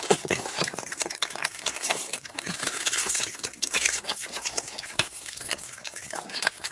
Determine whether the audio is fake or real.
fake